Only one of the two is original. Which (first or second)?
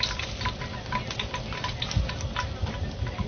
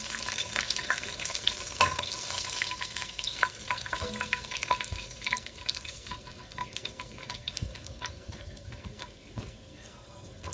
first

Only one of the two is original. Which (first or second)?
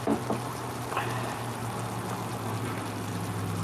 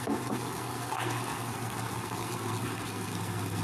first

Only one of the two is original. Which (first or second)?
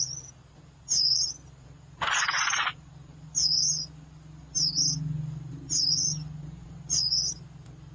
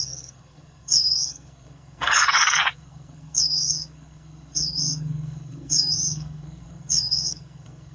first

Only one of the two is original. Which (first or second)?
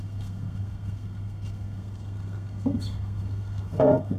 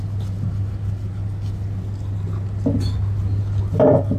second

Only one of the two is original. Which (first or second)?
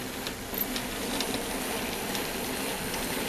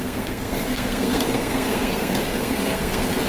first